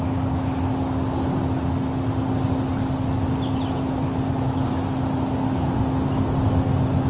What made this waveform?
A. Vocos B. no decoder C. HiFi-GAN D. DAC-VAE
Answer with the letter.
B